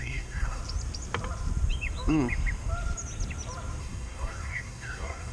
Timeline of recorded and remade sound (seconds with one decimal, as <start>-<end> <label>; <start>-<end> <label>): 0.0-0.6 remade; 0.6-3.8 recorded; 3.8-5.3 remade